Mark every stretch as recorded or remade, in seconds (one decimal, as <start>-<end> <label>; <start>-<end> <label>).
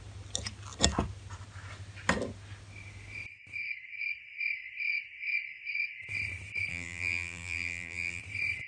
0.0-6.7 recorded; 6.7-8.2 remade; 8.2-8.7 recorded